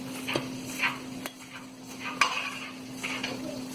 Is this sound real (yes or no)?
yes